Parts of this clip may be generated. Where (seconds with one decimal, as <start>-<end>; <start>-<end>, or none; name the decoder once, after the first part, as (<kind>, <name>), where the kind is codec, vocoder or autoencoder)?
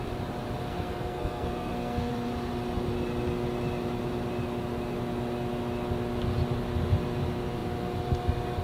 0.6-2.1 (codec, SNAC)